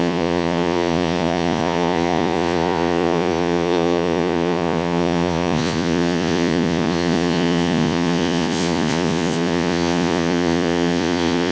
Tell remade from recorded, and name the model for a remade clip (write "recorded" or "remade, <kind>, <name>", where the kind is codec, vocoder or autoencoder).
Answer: remade, vocoder, Vocos